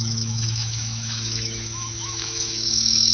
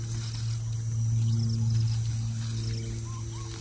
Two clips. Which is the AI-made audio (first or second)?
first